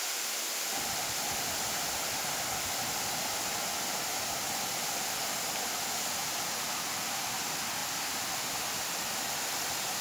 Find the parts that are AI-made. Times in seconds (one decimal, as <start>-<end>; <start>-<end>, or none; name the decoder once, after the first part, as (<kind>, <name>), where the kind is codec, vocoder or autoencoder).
none